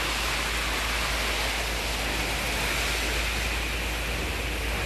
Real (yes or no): yes